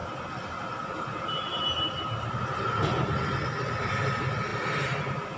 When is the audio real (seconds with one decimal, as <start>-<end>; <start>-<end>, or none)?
0.0-5.4